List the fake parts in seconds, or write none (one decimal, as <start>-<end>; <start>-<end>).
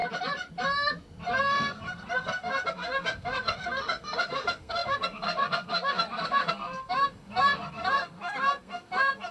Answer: 1.4-9.3